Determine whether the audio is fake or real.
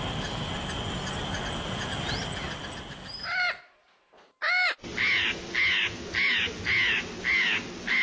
real